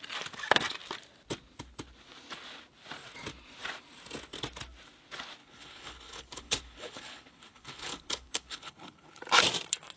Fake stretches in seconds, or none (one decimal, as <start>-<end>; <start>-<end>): 5.4-9.2